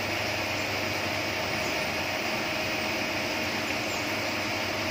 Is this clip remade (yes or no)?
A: no